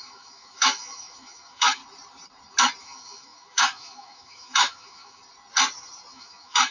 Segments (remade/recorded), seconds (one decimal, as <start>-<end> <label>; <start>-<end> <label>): 0.0-1.8 remade; 1.8-2.8 recorded; 2.8-5.2 remade; 5.2-6.1 recorded; 6.1-6.7 remade